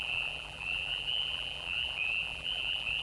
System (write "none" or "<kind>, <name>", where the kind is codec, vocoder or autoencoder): vocoder, BigVGAN v2